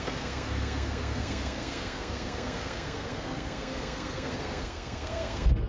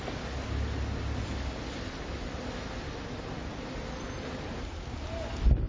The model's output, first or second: first